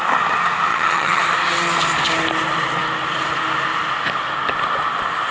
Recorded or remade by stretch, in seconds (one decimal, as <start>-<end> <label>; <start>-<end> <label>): 0.0-0.7 recorded; 0.7-1.2 remade; 1.2-5.3 recorded